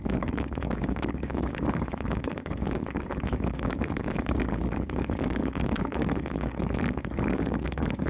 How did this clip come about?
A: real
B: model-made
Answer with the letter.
B